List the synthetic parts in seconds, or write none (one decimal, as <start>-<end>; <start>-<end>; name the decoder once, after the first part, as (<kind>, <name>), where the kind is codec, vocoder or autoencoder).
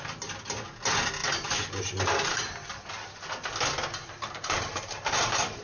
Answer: 1.2-2.5 (vocoder, BigVGAN v2); 4.0-5.6